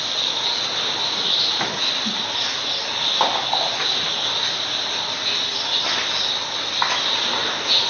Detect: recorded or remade recorded